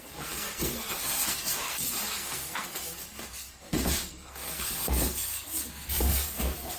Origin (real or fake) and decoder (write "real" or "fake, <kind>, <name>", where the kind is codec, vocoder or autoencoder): fake, codec, SNAC